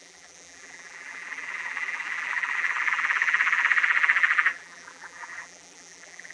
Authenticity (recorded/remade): remade